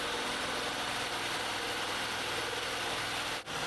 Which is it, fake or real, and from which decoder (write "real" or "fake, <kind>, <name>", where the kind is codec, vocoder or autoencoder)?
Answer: real